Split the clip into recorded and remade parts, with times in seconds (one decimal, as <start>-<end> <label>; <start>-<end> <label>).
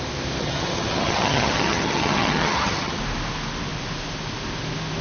0.0-0.4 recorded; 0.4-3.0 remade; 3.0-5.0 recorded